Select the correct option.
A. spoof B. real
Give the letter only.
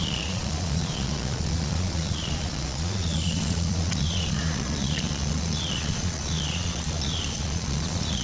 A